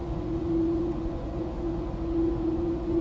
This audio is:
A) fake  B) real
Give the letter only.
A